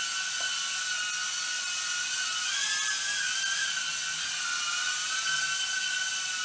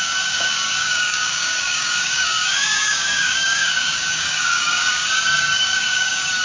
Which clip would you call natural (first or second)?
first